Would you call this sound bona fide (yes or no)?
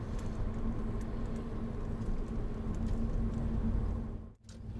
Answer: yes